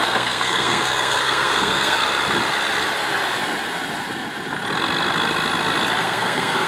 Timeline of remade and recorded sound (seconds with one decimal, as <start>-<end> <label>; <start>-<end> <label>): 0.0-2.0 remade; 2.0-6.0 recorded; 6.0-6.7 remade